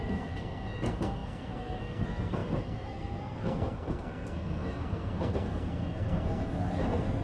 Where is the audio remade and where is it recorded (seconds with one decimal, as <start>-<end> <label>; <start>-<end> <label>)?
0.0-7.2 remade